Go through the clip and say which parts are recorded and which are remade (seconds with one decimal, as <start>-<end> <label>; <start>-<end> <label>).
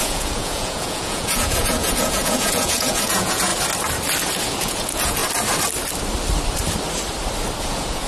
0.0-3.5 remade; 3.5-4.4 recorded; 4.4-5.2 remade; 5.2-7.6 recorded; 7.6-8.1 remade